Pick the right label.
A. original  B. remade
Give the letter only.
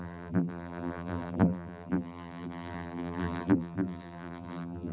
B